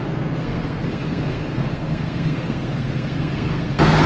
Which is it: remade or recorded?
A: remade